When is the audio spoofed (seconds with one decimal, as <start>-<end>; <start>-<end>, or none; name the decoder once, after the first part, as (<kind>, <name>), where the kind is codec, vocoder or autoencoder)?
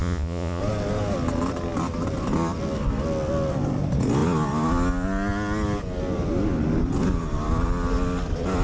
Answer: 0.0-0.6 (vocoder, Vocos)